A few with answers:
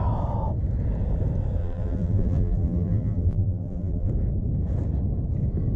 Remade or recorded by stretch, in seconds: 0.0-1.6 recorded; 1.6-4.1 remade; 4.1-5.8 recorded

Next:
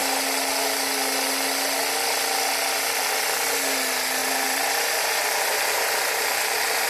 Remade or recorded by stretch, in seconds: 0.0-4.2 recorded; 4.2-6.9 remade

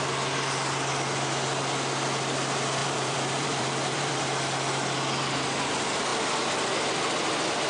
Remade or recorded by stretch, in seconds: 0.0-2.8 recorded; 2.8-4.2 remade; 4.2-7.7 recorded

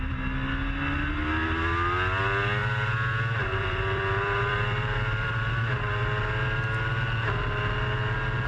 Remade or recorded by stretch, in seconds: 0.0-3.5 recorded; 3.5-6.1 remade; 6.1-8.5 recorded

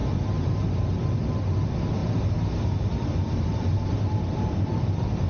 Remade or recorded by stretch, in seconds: 0.0-2.0 recorded; 2.0-5.3 remade

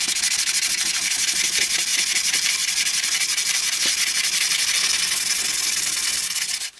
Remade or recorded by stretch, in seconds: 0.0-1.9 recorded; 1.9-4.8 remade; 4.8-6.8 recorded

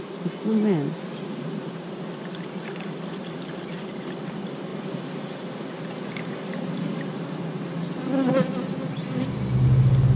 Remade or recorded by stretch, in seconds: 0.0-10.2 recorded